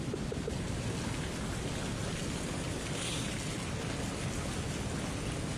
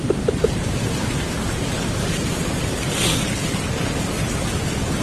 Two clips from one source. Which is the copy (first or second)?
second